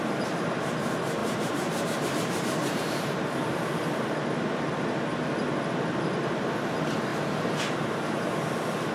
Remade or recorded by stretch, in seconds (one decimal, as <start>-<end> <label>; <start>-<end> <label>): 0.0-1.2 recorded; 1.2-3.7 remade; 3.7-7.1 recorded; 7.1-7.6 remade; 7.6-8.9 recorded